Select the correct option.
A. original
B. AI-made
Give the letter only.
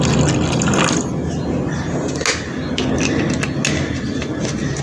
A